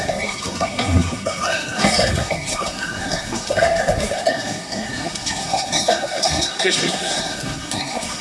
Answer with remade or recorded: remade